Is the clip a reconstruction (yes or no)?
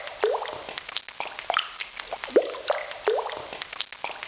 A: no